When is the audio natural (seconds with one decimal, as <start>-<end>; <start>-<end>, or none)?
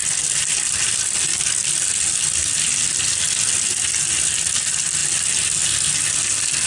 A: 0.0-6.7